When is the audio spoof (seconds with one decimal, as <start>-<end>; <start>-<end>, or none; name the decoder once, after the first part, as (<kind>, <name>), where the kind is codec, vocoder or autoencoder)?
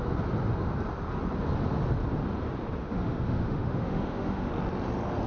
2.8-4.5 (autoencoder, DAC-VAE)